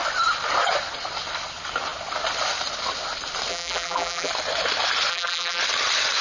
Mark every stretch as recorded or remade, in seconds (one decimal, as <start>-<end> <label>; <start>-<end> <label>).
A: 0.0-3.5 recorded; 3.5-4.3 remade; 4.3-5.1 recorded; 5.1-5.6 remade; 5.6-6.2 recorded